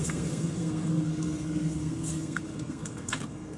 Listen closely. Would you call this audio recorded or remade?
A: remade